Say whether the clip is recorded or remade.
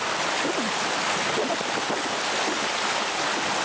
recorded